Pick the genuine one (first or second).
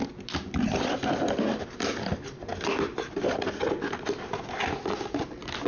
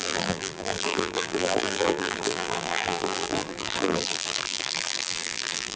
first